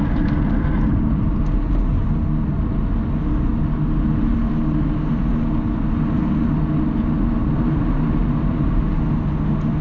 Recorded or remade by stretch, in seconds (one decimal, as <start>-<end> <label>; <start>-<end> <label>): 0.0-7.4 recorded; 7.4-8.8 remade; 8.8-9.8 recorded